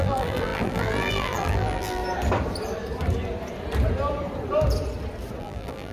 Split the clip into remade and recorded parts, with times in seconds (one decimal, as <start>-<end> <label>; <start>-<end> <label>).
0.0-2.0 remade; 2.0-5.4 recorded; 5.4-5.9 remade